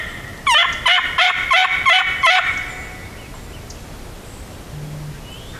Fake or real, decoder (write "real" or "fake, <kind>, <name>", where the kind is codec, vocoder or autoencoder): real